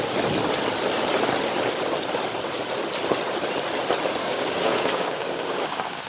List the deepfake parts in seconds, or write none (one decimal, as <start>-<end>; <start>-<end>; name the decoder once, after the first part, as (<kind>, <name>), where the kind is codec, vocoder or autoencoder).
4.2-6.1 (codec, DAC)